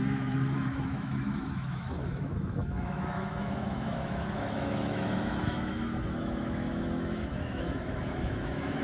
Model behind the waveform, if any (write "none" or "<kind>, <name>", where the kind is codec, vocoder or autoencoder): autoencoder, DAC-VAE